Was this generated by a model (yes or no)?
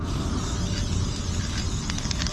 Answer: no